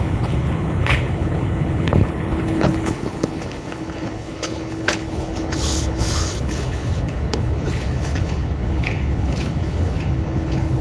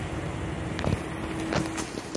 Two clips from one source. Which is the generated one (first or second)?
first